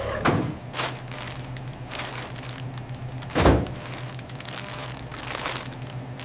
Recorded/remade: recorded